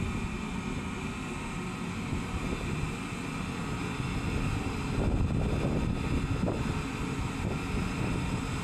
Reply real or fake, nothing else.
real